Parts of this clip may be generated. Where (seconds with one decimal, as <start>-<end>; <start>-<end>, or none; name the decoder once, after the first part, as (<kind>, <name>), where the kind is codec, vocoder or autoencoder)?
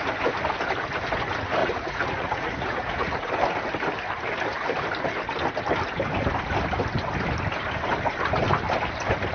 1.6-3.3 (vocoder, Vocos)